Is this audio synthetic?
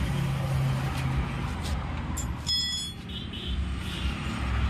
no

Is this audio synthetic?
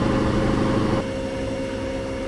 no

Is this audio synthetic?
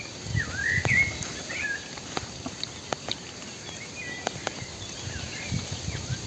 no